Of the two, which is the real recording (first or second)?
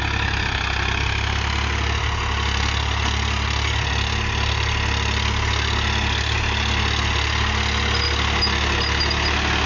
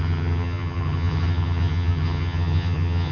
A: first